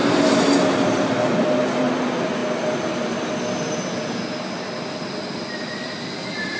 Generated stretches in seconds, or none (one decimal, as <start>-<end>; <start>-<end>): none